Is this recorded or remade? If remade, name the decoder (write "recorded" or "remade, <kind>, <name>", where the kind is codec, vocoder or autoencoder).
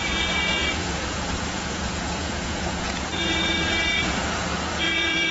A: remade, vocoder, Vocos